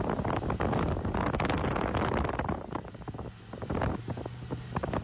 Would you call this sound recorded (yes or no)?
yes